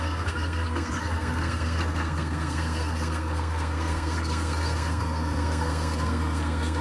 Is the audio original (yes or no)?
no